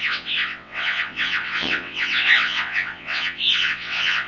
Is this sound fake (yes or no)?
yes